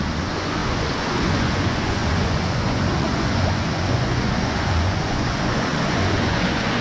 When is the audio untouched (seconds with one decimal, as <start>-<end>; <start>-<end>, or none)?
none